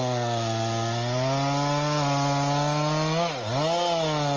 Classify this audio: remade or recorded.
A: recorded